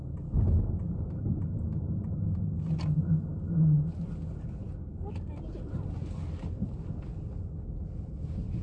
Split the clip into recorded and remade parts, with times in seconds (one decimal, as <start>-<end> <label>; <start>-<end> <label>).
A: 0.0-8.6 recorded